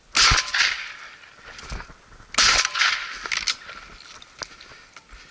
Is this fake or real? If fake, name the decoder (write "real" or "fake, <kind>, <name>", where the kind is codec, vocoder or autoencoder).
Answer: real